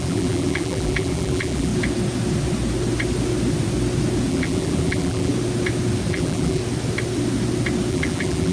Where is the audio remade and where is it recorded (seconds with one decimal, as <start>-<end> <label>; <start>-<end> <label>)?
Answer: 0.0-1.7 remade; 1.7-4.3 recorded; 4.3-5.3 remade; 5.3-6.1 recorded; 6.1-6.6 remade; 6.6-7.9 recorded; 7.9-8.5 remade